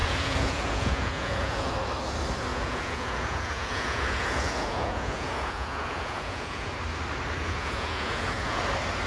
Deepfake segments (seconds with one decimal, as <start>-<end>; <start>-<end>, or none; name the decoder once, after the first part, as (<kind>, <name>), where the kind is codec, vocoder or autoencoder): 0.0-1.7 (vocoder, Vocos); 2.5-6.7; 7.4-8.6